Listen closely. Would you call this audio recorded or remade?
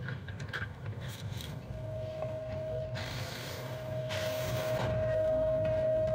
remade